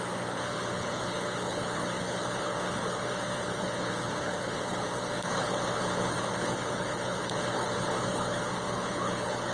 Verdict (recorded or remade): remade